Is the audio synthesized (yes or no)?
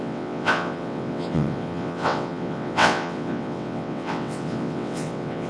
yes